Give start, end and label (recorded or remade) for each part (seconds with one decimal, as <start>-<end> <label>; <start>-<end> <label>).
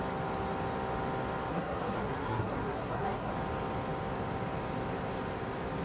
0.0-1.5 recorded; 1.5-3.3 remade; 3.3-5.8 recorded